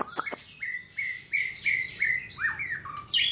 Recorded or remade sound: recorded